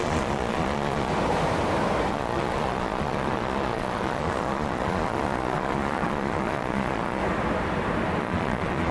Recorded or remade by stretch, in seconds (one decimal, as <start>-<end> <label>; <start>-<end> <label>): 0.0-1.1 remade; 1.1-2.1 recorded; 2.1-7.2 remade; 7.2-8.2 recorded; 8.2-8.9 remade